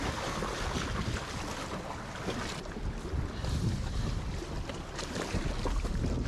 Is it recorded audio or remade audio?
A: recorded